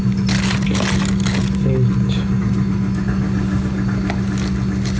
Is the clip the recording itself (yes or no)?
yes